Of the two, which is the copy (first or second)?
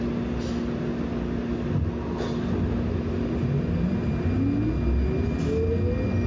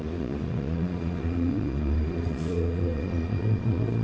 second